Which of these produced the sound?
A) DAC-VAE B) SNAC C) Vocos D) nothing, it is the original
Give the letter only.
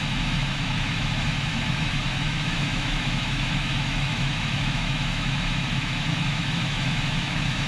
A